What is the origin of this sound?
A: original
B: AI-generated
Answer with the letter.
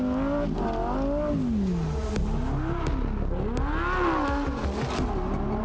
A